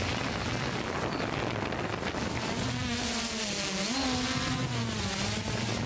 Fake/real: real